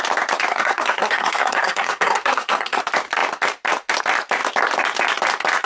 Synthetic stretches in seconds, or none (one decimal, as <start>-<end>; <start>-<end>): 0.5-2.8